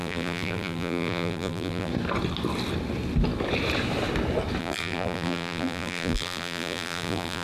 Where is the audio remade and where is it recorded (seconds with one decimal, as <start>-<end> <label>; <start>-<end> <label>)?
0.0-1.9 remade; 1.9-4.6 recorded; 4.6-7.4 remade